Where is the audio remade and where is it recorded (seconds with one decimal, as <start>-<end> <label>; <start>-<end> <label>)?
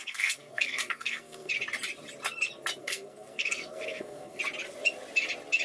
0.0-1.5 remade; 1.5-2.8 recorded; 2.8-4.4 remade; 4.4-5.6 recorded